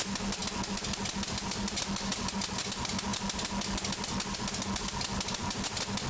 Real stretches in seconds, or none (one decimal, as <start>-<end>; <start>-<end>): 0.0-6.1